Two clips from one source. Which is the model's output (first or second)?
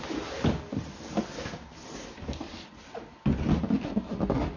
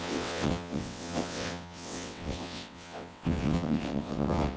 second